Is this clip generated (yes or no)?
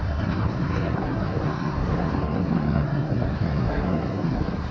yes